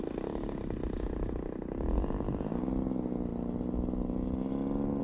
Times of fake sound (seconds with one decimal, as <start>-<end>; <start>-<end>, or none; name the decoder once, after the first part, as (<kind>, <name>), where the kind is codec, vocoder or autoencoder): none